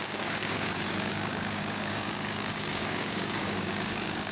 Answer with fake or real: fake